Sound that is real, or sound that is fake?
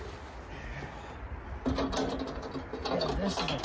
real